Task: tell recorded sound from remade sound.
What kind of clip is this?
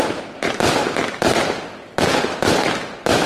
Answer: recorded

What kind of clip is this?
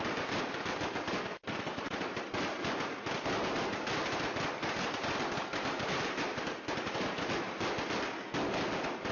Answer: recorded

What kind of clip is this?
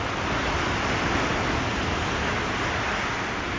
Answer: recorded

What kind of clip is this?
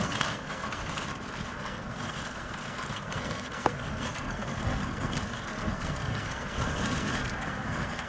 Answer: remade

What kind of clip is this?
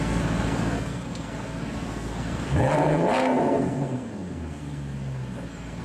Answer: remade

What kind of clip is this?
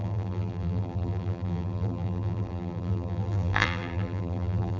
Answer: remade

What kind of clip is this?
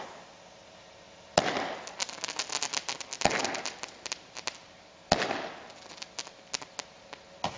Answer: recorded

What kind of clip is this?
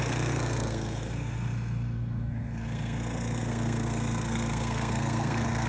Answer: remade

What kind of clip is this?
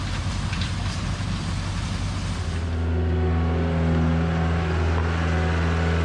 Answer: recorded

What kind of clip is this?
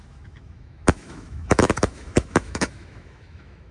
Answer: remade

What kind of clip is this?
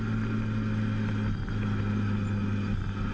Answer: recorded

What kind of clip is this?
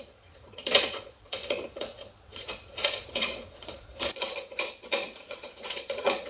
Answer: remade